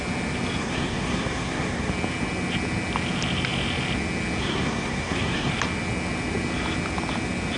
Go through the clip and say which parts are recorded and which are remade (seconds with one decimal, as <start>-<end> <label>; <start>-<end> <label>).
0.0-0.6 recorded; 0.6-1.9 remade; 1.9-4.4 recorded; 4.4-5.5 remade; 5.5-7.6 recorded